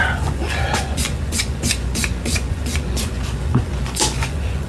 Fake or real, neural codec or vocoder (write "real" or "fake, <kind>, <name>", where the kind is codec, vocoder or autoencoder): fake, vocoder, Vocos